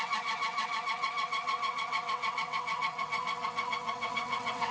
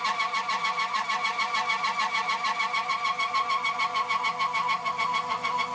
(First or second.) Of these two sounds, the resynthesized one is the first